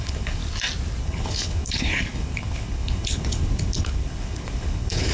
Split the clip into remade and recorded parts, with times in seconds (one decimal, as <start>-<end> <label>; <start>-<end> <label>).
0.0-0.4 remade; 0.4-1.0 recorded; 1.0-5.1 remade